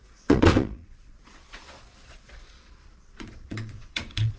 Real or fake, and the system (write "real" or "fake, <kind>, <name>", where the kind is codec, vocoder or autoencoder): fake, vocoder, Vocos